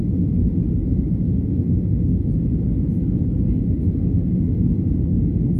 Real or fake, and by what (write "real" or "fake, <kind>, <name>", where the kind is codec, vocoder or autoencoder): real